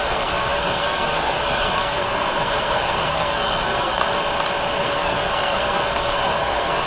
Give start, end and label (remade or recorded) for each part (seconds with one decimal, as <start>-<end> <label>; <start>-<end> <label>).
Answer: 0.0-4.0 remade; 4.0-4.8 recorded; 4.8-6.9 remade